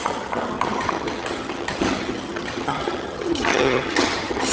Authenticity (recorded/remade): remade